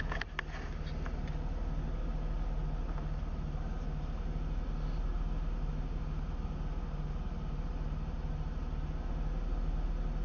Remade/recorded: recorded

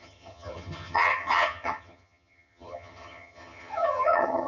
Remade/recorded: remade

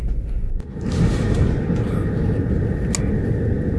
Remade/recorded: recorded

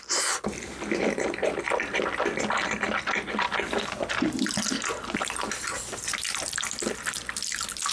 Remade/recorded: recorded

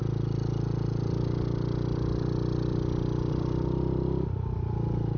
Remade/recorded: recorded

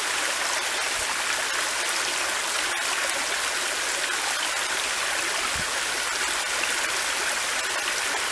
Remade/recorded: recorded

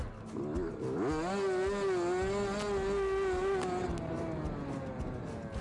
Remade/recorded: recorded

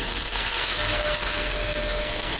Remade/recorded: remade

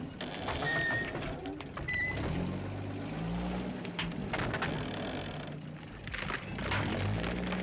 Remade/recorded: recorded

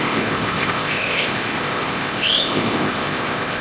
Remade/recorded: remade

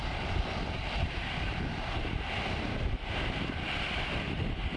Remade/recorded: remade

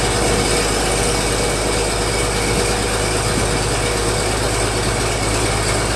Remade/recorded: recorded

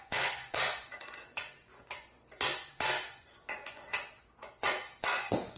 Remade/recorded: remade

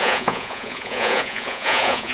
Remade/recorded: remade